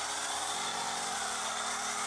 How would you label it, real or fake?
real